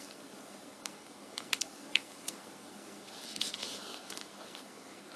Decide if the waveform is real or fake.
fake